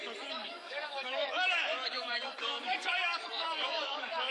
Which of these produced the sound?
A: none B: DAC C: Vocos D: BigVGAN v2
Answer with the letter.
B